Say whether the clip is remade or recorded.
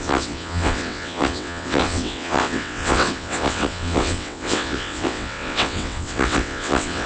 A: remade